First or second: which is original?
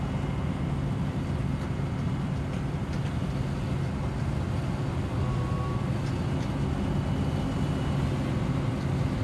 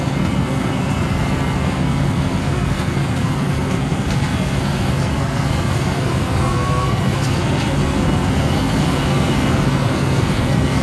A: first